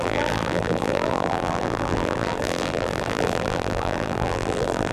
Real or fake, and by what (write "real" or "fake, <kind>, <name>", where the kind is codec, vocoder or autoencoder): fake, vocoder, BigVGAN v2